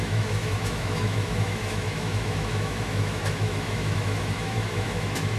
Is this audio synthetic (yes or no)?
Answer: yes